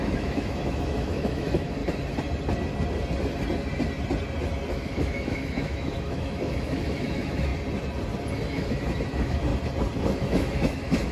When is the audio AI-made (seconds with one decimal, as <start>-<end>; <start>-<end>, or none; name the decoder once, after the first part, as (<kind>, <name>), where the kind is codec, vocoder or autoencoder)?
0.0-1.8 (autoencoder, DAC-VAE); 4.7-7.5; 8.3-9.5; 10.0-11.1

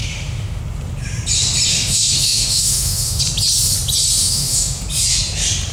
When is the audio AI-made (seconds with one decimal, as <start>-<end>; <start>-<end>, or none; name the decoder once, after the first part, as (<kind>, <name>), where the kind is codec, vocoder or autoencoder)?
0.0-0.6 (autoencoder, DAC-VAE); 1.7-3.2; 4.2-4.8

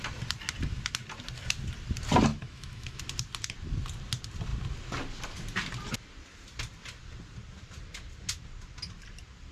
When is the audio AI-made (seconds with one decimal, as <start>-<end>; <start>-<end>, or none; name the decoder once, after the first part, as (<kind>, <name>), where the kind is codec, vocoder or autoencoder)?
2.3-3.0 (autoencoder, DAC-VAE)

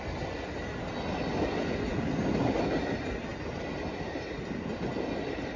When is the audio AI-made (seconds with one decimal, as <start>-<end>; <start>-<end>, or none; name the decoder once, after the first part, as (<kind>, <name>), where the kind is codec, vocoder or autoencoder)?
none